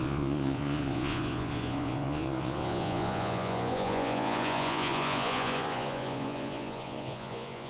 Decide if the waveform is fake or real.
fake